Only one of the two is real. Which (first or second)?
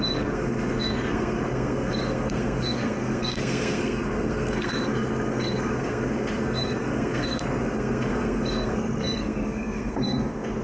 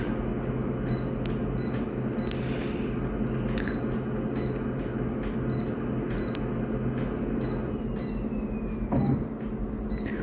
second